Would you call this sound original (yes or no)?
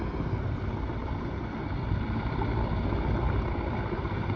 yes